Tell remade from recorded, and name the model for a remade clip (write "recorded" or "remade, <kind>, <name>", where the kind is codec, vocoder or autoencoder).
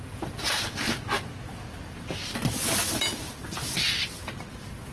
recorded